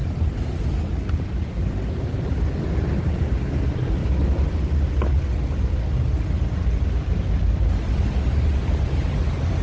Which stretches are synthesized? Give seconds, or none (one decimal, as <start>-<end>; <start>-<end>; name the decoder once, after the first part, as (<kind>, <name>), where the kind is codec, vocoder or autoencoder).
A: 4.0-4.6 (vocoder, BigVGAN v2)